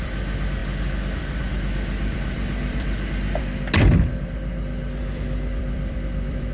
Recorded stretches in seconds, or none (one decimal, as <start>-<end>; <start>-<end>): 3.4-5.0